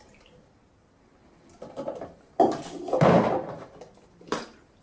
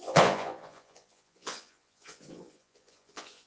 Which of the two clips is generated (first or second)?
second